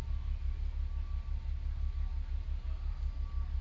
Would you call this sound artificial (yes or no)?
no